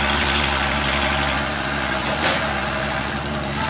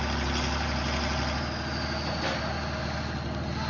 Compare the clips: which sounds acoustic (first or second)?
second